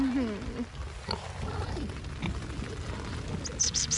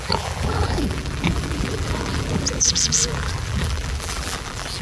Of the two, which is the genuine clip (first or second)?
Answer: first